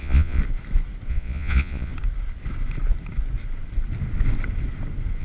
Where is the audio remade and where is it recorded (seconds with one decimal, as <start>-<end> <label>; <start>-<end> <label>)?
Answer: 0.0-0.4 remade; 0.4-1.1 recorded; 1.1-1.9 remade; 1.9-5.2 recorded